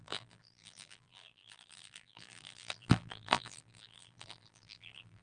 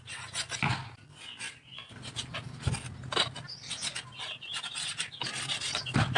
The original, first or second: second